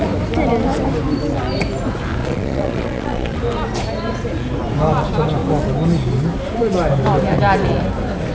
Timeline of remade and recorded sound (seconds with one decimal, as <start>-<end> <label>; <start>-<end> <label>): 0.0-2.2 recorded; 2.2-3.4 remade; 3.4-8.3 recorded